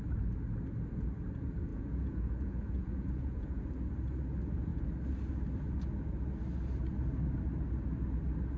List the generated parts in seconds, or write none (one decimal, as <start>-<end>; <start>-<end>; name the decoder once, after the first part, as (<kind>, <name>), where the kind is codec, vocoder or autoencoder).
1.7-3.6 (vocoder, Vocos)